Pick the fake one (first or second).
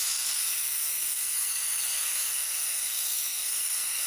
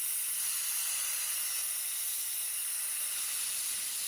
first